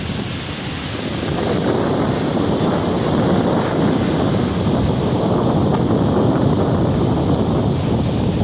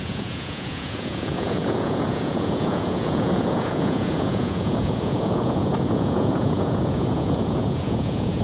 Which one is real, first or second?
first